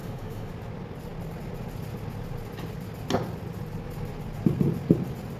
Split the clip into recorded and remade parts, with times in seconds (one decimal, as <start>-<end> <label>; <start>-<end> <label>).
0.0-0.5 remade; 0.5-5.4 recorded